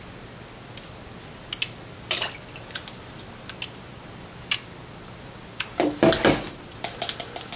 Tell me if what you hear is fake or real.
real